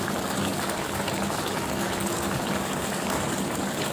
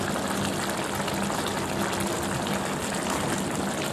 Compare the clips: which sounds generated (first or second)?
first